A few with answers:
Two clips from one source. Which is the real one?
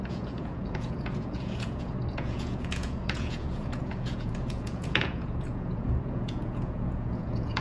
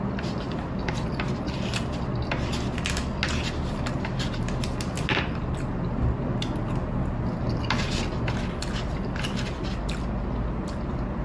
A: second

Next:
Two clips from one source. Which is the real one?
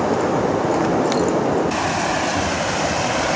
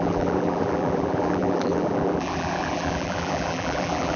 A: first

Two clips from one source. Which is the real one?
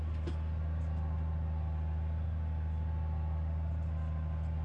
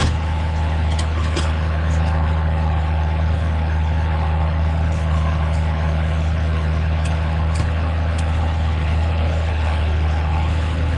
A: first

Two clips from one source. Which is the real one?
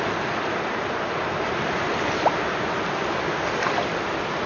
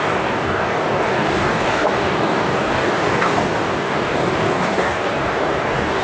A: first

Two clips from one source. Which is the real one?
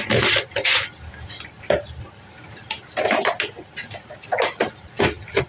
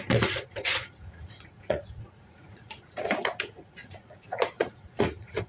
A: first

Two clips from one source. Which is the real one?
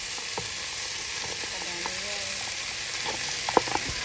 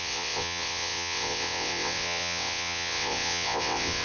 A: first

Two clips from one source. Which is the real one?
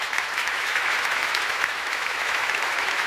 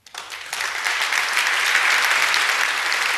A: second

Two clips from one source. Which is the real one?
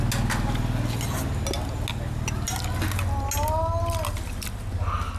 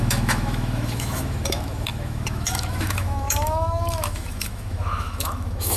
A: first